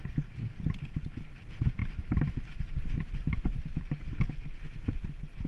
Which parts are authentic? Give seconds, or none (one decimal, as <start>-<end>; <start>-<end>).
0.0-5.5